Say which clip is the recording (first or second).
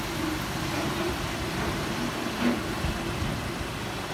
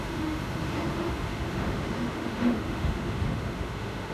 first